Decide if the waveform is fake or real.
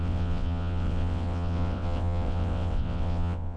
fake